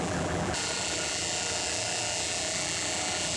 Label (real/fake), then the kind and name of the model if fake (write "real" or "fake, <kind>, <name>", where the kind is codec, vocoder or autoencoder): fake, vocoder, BigVGAN v2